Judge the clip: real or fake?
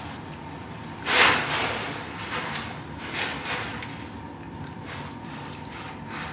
real